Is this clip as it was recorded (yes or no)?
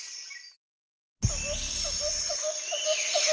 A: yes